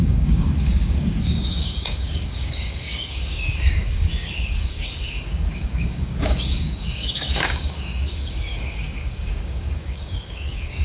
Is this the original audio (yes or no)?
no